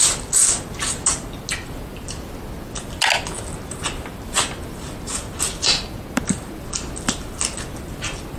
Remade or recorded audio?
recorded